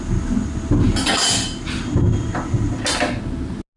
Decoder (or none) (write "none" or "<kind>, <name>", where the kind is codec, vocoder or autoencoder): none